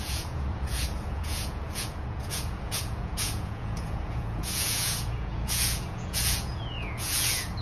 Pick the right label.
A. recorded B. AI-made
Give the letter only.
B